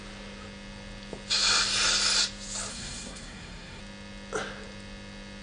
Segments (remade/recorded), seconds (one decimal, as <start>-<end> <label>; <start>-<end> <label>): 0.0-2.7 recorded; 2.7-3.8 remade; 3.8-5.4 recorded